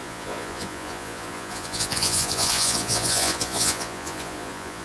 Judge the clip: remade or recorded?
remade